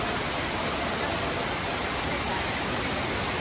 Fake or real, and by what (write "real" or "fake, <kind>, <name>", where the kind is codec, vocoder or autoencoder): real